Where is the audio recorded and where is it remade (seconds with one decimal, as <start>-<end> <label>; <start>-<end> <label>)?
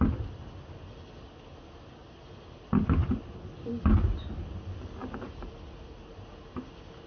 0.0-7.1 recorded